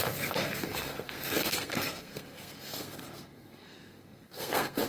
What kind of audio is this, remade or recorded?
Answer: remade